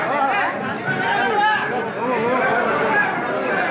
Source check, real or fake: real